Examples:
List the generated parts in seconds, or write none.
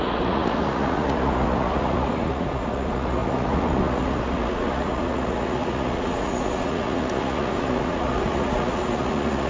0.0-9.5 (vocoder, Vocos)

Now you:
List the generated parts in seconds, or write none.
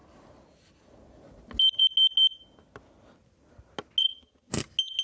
4.0-4.5 (vocoder, HiFi-GAN)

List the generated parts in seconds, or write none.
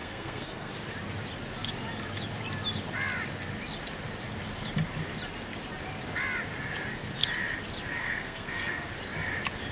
0.0-0.7 (codec, SNAC); 8.0-8.9